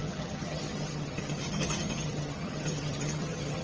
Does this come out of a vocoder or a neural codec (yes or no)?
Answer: yes